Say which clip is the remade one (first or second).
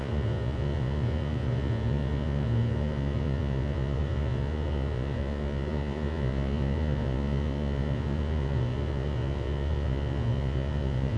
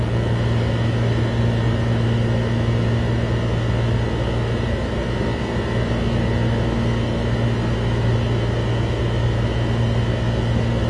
first